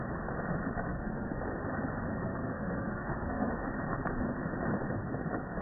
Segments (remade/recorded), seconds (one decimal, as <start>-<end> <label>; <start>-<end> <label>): 0.0-0.9 recorded; 0.9-1.4 remade; 1.4-2.1 recorded; 2.1-3.5 remade; 3.5-5.6 recorded